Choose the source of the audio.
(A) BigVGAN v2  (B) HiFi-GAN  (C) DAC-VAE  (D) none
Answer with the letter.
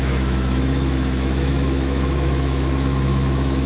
C